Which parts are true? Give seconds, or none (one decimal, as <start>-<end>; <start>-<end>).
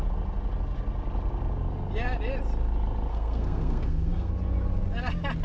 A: 0.0-3.1; 4.3-5.4